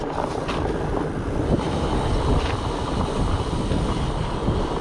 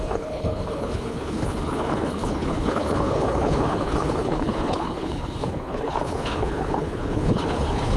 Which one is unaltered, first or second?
first